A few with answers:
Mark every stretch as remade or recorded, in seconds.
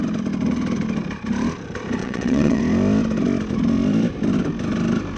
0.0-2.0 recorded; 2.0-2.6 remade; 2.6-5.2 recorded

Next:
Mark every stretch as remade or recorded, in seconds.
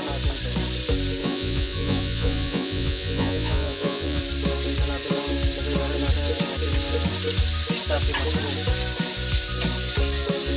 0.0-1.2 recorded; 1.2-4.2 remade; 4.2-10.6 recorded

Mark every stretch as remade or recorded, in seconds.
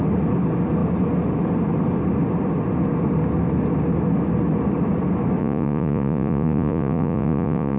0.0-5.4 recorded; 5.4-7.8 remade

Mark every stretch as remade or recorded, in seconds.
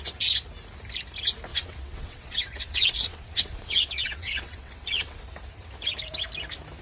0.0-1.5 recorded; 1.5-5.2 remade; 5.2-6.8 recorded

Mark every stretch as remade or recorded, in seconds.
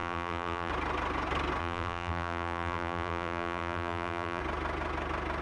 0.0-0.7 remade; 0.7-1.6 recorded; 1.6-4.4 remade; 4.4-5.4 recorded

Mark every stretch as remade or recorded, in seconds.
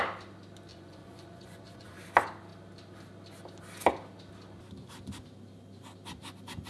0.0-0.7 recorded; 0.7-2.0 remade; 2.0-6.7 recorded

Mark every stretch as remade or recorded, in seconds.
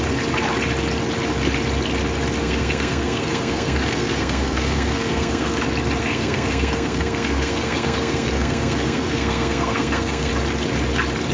0.0-2.4 recorded; 2.4-5.6 remade; 5.6-6.0 recorded; 6.0-10.3 remade; 10.3-11.3 recorded